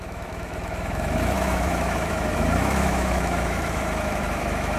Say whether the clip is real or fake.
fake